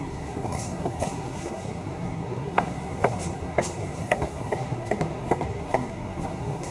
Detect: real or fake fake